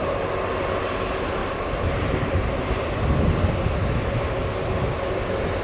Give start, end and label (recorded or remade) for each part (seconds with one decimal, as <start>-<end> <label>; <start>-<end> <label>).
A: 0.0-1.4 recorded; 1.4-3.0 remade; 3.0-5.6 recorded

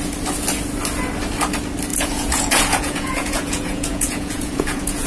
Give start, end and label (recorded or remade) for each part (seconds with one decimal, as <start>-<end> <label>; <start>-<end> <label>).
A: 0.0-1.9 recorded; 1.9-5.1 remade